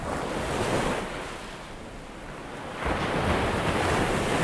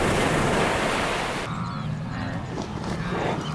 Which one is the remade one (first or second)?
second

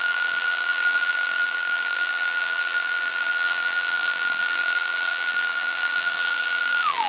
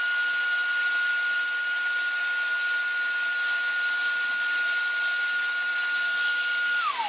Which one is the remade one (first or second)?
first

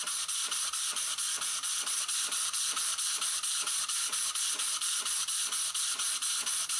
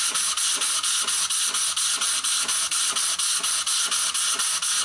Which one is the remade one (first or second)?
first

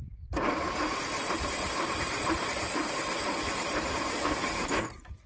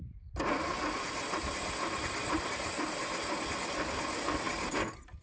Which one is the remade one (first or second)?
first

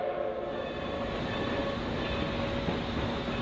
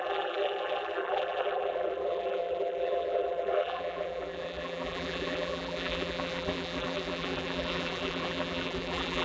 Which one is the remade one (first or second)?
second